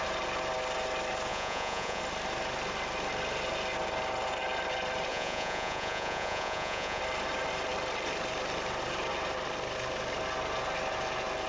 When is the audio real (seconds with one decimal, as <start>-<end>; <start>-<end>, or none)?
0.0-1.3; 2.0-5.1; 7.0-11.5